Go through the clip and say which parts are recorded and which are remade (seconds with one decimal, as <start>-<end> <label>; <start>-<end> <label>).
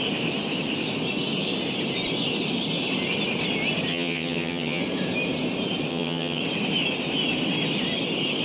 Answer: 0.0-3.9 recorded; 3.9-4.8 remade; 4.8-5.9 recorded; 5.9-6.4 remade; 6.4-8.4 recorded